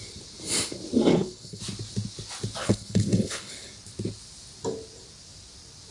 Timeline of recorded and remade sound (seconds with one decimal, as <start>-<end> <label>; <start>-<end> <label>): 0.0-1.1 recorded; 1.1-1.6 remade; 1.6-2.6 recorded; 2.6-3.7 remade; 3.7-5.9 recorded